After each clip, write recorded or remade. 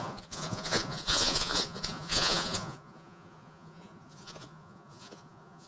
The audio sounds remade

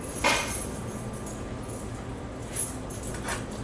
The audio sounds recorded